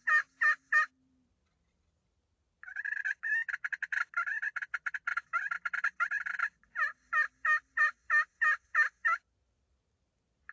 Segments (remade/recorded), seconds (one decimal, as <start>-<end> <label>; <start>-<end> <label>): 0.0-10.5 recorded